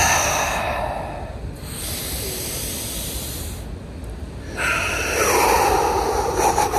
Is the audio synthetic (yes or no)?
no